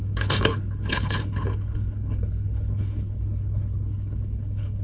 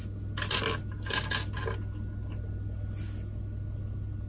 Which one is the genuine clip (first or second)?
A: second